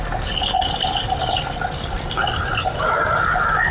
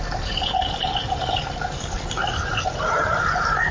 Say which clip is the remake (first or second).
second